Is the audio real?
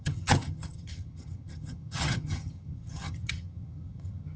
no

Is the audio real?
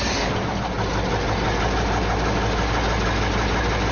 yes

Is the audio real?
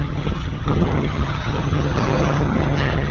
no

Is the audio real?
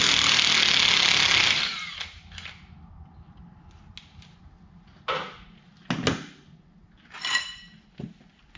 yes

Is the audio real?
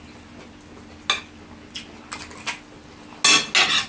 yes